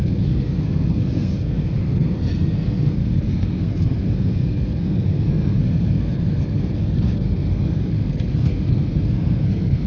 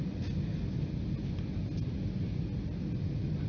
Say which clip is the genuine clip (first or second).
second